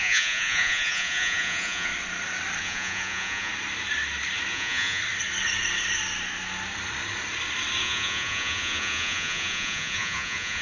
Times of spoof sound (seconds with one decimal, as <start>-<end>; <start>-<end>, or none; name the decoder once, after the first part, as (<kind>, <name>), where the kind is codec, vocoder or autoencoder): 0.0-1.9 (vocoder, Vocos); 2.6-3.5; 4.5-5.0; 7.8-10.6